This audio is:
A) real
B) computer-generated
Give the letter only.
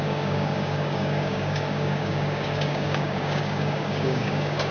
B